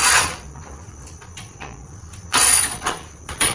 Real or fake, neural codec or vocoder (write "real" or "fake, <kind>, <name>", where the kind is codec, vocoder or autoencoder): fake, vocoder, Vocos